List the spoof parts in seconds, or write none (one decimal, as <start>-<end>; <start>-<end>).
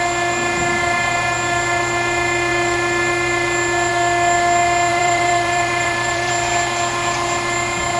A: 4.9-6.3